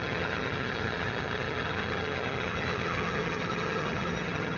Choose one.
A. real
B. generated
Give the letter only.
B